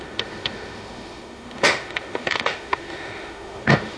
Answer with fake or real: fake